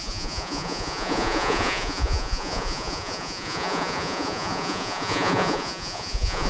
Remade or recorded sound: remade